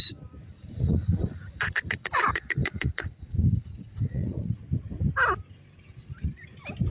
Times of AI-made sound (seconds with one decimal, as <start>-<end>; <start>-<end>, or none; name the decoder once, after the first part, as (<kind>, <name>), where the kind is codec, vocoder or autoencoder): 0.5-4.6 (vocoder, Vocos)